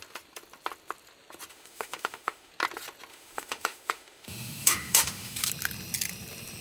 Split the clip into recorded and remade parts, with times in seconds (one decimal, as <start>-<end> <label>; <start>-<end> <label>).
0.0-1.5 recorded; 1.5-2.5 remade; 2.5-3.1 recorded; 3.1-5.5 remade; 5.5-6.6 recorded